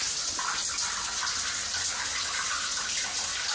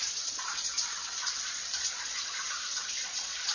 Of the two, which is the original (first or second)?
first